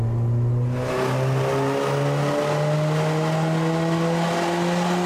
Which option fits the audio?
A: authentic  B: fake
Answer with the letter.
A